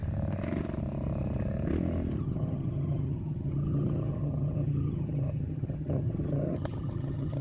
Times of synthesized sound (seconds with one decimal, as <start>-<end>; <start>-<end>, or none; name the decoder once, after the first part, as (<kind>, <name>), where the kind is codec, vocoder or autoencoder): 2.2-7.4 (vocoder, HiFi-GAN)